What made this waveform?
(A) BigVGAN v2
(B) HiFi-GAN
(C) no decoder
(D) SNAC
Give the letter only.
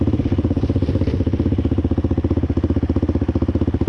C